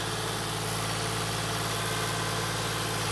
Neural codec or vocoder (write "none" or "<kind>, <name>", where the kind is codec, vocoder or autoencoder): none